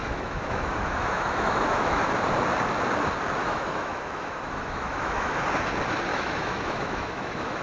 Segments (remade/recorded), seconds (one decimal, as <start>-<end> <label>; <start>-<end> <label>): 0.0-2.0 remade; 2.0-3.4 recorded; 3.4-5.4 remade; 5.4-6.1 recorded; 6.1-7.6 remade